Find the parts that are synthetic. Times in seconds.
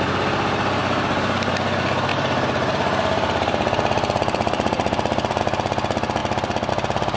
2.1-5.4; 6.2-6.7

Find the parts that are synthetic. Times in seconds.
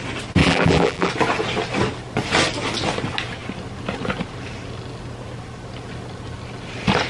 0.4-1.1